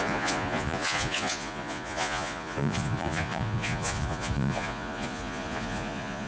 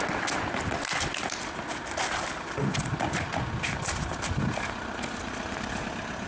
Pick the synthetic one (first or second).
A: first